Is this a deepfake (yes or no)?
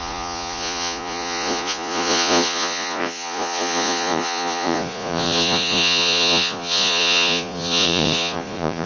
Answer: yes